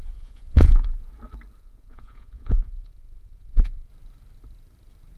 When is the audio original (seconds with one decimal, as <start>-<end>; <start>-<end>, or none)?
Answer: 1.1-1.6; 3.9-5.2